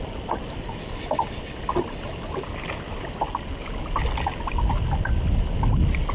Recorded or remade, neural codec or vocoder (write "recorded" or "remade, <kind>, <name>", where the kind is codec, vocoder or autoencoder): recorded